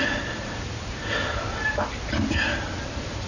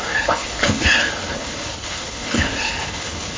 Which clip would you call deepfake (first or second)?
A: second